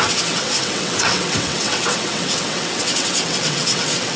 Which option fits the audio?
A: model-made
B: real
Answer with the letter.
A